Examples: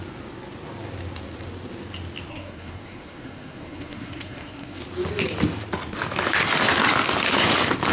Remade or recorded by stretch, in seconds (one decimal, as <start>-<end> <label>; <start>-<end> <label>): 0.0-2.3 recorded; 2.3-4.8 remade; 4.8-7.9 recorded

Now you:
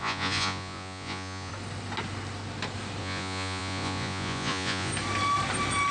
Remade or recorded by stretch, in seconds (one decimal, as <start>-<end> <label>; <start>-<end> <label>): 0.0-1.5 remade; 1.5-3.0 recorded; 3.0-4.9 remade; 4.9-5.9 recorded

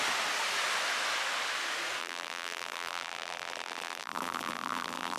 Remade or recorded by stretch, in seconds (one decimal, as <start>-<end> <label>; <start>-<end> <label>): 0.0-2.0 recorded; 2.0-5.2 remade

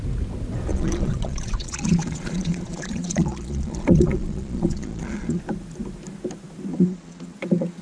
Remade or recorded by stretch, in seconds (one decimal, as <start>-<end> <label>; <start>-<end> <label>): 0.0-0.7 recorded; 0.7-5.4 remade; 5.4-6.7 recorded; 6.7-7.8 remade

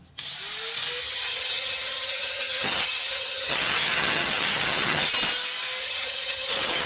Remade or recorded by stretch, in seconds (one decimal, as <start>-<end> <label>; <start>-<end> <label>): 0.0-1.0 recorded; 1.0-5.1 remade; 5.1-5.8 recorded; 5.8-6.9 remade